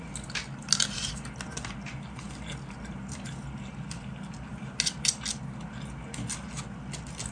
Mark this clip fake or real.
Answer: real